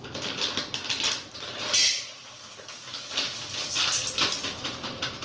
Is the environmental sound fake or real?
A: real